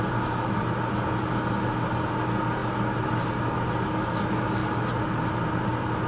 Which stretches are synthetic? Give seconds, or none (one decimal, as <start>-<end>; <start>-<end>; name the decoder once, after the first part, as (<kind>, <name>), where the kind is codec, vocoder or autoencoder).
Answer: none